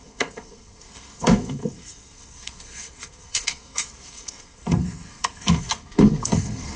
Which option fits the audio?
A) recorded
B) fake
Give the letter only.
B